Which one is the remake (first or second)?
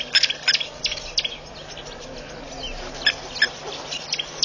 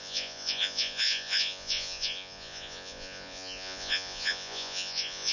second